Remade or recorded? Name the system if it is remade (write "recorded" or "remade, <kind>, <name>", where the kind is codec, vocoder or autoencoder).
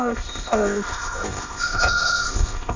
remade, codec, ZipCodec